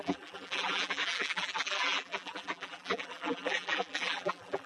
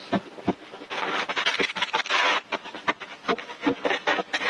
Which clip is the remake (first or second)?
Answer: first